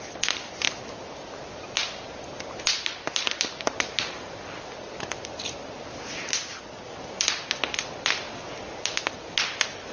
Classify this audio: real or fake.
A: real